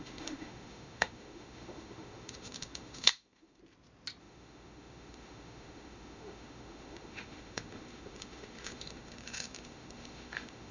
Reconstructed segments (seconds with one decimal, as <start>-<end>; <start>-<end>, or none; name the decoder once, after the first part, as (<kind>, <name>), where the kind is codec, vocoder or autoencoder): 0.0-3.6 (autoencoder, DAC-VAE); 4.2-10.7